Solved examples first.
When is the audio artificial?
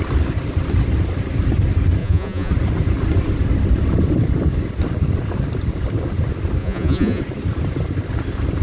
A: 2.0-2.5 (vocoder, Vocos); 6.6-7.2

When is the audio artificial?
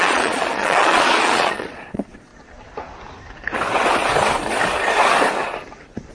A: 0.0-2.3 (vocoder, Vocos)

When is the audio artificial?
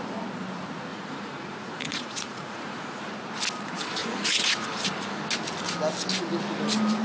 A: 0.9-3.0 (vocoder, Vocos); 4.0-4.5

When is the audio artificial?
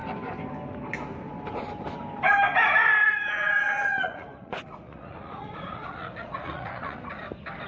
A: 3.0-7.0 (vocoder, Vocos)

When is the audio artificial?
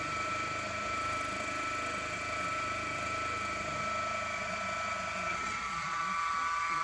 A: 5.3-6.0 (vocoder, Vocos)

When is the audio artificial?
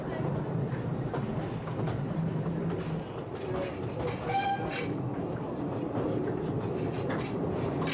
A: none